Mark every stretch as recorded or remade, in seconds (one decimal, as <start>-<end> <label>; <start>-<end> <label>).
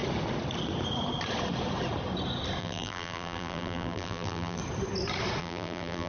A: 0.0-2.6 recorded; 2.6-4.6 remade; 4.6-5.4 recorded; 5.4-6.1 remade